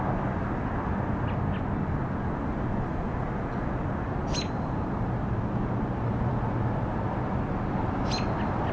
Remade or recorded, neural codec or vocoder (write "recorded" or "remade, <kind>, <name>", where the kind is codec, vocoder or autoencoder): recorded